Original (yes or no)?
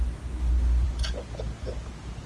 yes